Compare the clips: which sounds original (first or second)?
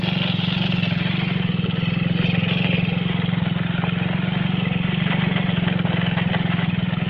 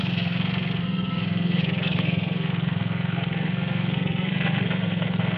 first